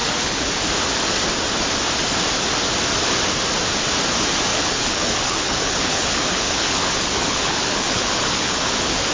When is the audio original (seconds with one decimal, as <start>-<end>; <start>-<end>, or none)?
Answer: 0.5-4.5